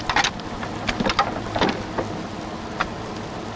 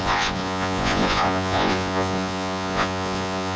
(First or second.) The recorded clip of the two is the first